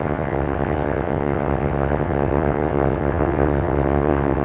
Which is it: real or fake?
fake